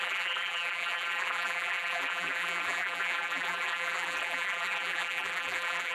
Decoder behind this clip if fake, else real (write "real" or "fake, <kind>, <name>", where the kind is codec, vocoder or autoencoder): fake, vocoder, BigVGAN v2